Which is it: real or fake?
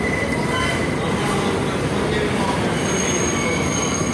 real